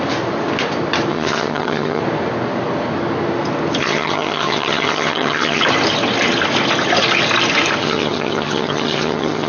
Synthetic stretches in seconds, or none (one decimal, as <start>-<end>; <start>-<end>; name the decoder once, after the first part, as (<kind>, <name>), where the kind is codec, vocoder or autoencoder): 1.1-2.0 (vocoder, HiFi-GAN); 3.8-5.6; 7.8-9.5